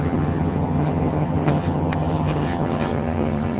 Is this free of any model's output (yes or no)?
no